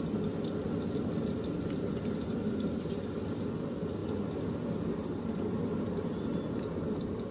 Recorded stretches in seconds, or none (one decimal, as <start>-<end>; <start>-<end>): 0.0-7.3

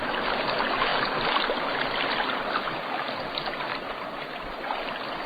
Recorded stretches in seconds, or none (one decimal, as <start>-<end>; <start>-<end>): 0.0-3.7

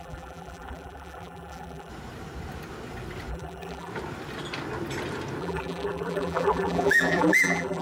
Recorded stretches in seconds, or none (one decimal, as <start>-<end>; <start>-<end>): 1.9-3.3; 3.9-5.4

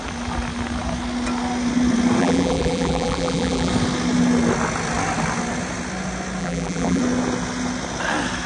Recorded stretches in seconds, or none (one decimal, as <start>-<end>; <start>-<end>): 0.0-2.2; 3.7-6.4; 7.0-8.5